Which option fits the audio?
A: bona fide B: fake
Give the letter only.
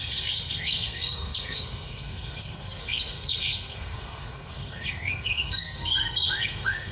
B